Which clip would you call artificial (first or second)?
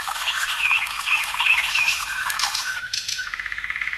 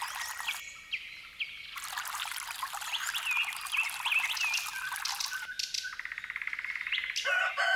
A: first